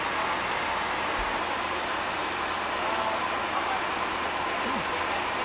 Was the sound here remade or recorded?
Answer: recorded